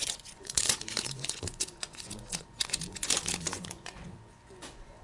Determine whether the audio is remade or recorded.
remade